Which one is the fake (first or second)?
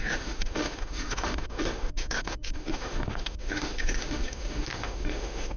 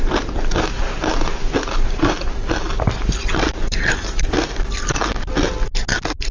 first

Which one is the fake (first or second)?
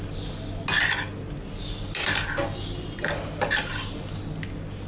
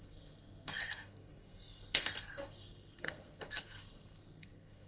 second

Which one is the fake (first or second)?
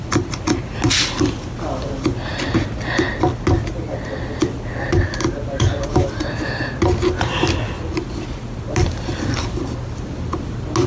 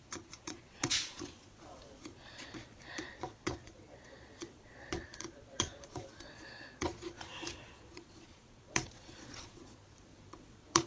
second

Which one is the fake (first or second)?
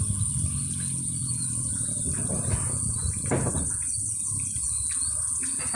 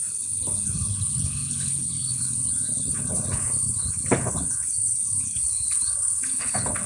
second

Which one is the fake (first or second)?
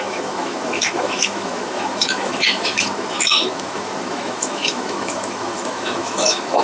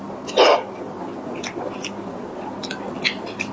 first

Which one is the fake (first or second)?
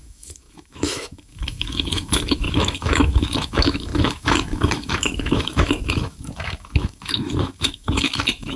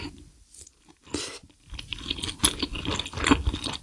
first